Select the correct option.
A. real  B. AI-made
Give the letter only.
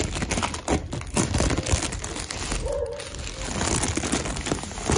A